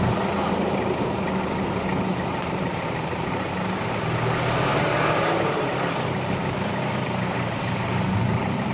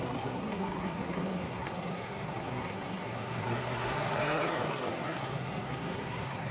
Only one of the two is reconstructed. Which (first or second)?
second